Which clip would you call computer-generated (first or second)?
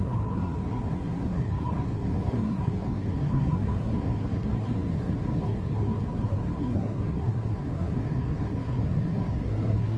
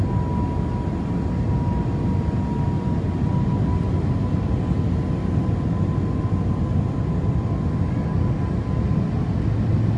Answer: first